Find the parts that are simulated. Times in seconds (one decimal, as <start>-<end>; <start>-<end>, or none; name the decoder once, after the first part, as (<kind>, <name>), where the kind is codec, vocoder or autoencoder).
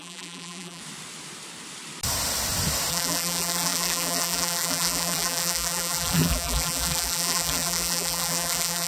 0.0-0.8 (vocoder, BigVGAN v2); 2.9-8.9